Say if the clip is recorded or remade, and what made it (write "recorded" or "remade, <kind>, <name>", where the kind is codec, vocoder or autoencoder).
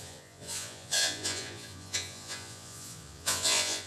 remade, vocoder, Vocos